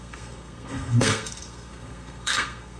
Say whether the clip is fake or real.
fake